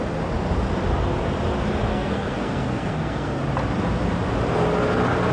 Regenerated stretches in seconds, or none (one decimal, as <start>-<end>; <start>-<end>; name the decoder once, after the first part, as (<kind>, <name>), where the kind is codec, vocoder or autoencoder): 1.9-3.4 (codec, SNAC)